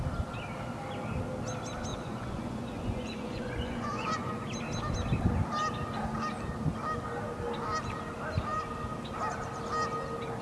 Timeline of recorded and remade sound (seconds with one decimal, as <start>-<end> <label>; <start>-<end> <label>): 0.0-1.9 recorded; 1.9-4.4 remade; 4.4-10.4 recorded